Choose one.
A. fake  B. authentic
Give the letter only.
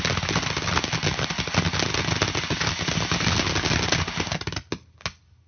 B